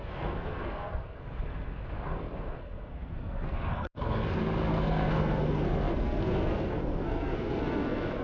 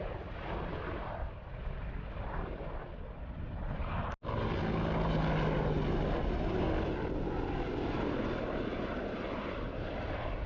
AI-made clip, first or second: first